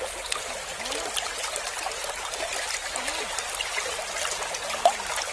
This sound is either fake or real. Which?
real